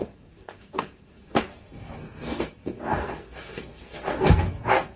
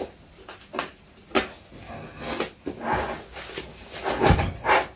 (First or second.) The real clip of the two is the second